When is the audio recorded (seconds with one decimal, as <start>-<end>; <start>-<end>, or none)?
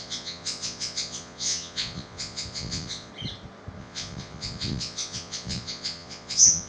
3.1-3.8